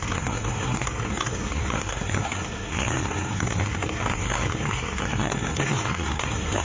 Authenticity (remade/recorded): remade